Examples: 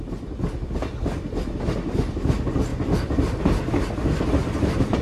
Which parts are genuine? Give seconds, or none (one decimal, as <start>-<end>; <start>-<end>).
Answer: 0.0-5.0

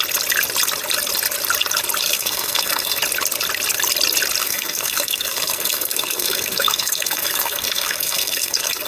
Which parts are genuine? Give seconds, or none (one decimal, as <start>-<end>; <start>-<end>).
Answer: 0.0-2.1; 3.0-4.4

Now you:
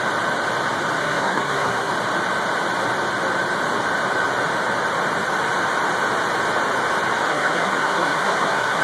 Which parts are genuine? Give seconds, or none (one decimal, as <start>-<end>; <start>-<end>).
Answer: 0.0-1.0; 1.9-7.3

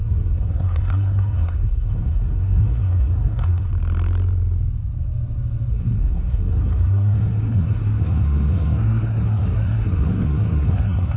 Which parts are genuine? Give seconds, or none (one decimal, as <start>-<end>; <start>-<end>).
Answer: 3.7-5.7